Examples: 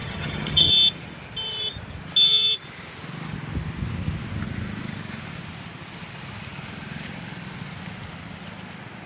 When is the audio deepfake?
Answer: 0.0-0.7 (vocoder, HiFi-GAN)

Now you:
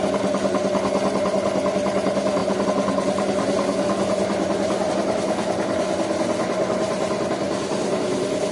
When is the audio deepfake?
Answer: none

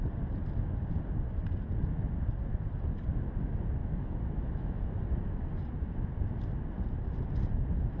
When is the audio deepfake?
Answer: 3.8-4.8 (autoencoder, DAC-VAE)

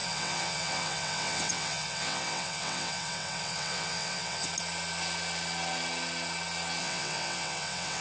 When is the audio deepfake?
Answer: 0.0-4.5 (vocoder, WaveNeXt); 6.8-8.0